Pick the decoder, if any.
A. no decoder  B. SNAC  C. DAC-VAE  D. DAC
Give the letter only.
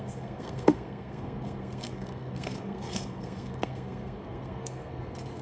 B